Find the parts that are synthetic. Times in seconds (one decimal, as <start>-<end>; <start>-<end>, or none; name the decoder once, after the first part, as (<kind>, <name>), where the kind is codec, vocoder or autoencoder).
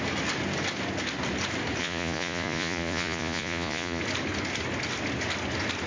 1.8-4.0 (vocoder, Vocos)